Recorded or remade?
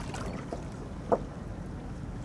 recorded